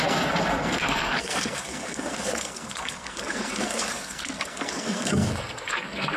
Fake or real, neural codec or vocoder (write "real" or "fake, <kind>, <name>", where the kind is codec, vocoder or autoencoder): fake, codec, SNAC